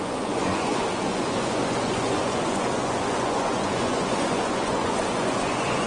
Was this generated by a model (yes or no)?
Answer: yes